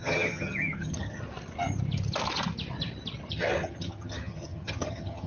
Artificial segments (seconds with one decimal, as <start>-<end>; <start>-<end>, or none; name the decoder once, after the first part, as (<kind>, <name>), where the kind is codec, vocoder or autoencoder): 0.0-1.2 (vocoder, HiFi-GAN); 3.3-5.3